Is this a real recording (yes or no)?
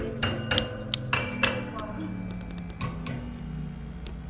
yes